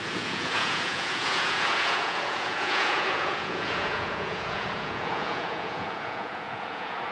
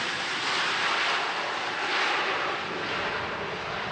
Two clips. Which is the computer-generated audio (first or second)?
first